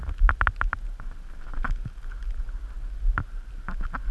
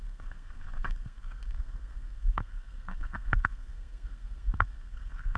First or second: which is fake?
second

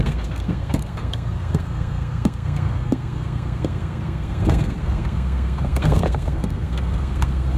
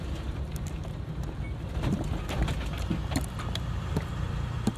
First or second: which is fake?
first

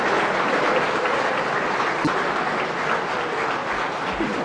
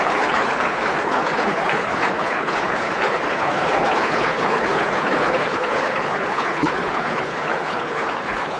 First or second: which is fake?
second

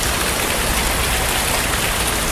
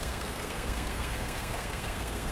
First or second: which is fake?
second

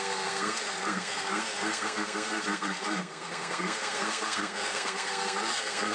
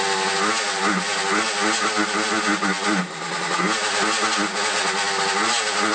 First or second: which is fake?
first